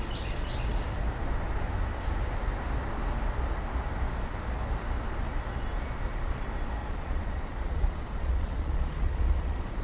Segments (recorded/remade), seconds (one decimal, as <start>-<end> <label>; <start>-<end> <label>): 0.0-6.8 recorded; 6.8-9.8 remade